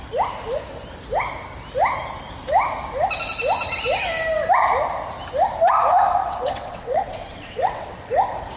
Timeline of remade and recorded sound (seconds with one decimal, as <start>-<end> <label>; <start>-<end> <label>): 0.0-6.2 recorded; 6.2-8.1 remade; 8.1-8.6 recorded

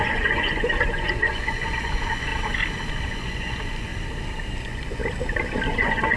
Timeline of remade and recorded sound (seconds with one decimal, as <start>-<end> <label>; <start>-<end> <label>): 0.0-2.3 remade; 2.3-2.9 recorded; 2.9-3.9 remade; 3.9-4.6 recorded; 4.6-5.0 remade; 5.0-5.7 recorded; 5.7-6.2 remade

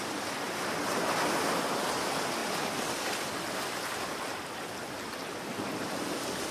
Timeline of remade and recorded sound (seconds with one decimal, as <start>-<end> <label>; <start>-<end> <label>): 0.0-6.5 recorded

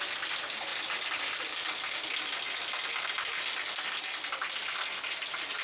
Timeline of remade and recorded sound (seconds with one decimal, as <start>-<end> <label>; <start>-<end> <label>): 0.0-5.6 recorded